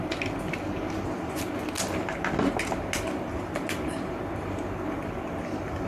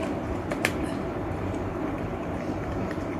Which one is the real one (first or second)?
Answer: first